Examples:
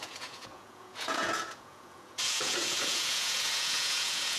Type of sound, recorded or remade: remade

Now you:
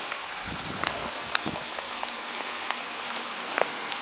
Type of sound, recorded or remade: remade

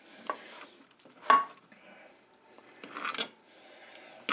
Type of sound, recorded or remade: recorded